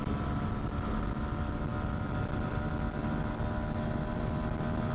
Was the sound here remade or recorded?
recorded